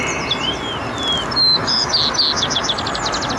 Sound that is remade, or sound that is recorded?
recorded